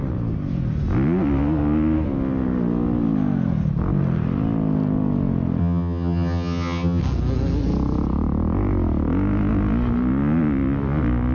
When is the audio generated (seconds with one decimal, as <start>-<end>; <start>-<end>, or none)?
5.6-7.0